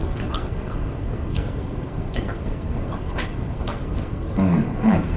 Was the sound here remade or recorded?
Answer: remade